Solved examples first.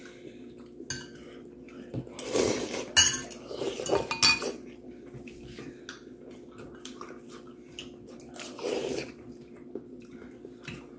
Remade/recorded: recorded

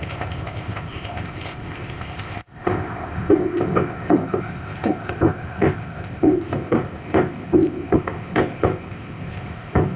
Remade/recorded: remade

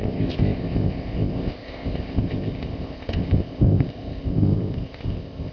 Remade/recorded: remade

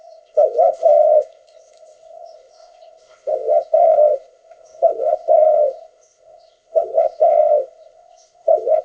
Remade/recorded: remade